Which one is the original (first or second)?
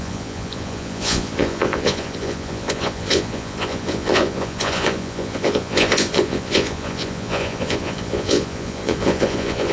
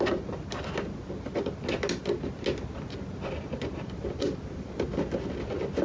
second